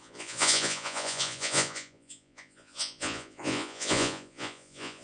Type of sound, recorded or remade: remade